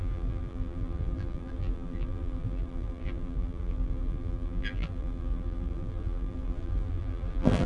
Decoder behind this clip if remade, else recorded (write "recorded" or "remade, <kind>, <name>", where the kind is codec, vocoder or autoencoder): remade, vocoder, BigVGAN v2